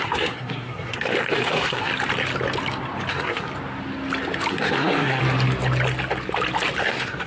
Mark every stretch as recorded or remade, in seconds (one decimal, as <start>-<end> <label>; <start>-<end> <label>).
0.0-1.9 remade; 1.9-3.1 recorded; 3.1-3.5 remade; 3.5-4.5 recorded; 4.5-5.2 remade; 5.2-6.8 recorded; 6.8-7.3 remade